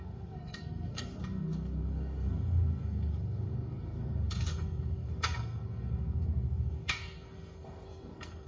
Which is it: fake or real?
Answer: fake